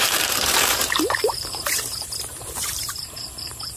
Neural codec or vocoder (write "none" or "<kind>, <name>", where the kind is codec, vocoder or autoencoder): vocoder, BigVGAN v2